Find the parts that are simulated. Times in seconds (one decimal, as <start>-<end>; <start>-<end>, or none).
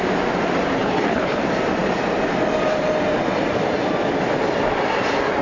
0.8-1.4